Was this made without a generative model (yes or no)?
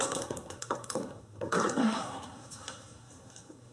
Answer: no